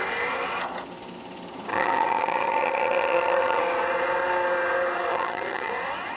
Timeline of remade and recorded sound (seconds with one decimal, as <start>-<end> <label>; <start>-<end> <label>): 0.0-1.7 recorded; 1.7-3.6 remade; 3.6-5.1 recorded; 5.1-5.7 remade; 5.7-6.2 recorded